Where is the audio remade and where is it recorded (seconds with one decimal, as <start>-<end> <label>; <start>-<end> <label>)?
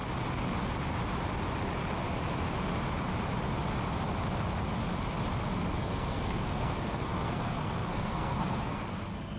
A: 0.0-5.8 recorded; 5.8-8.8 remade; 8.8-9.4 recorded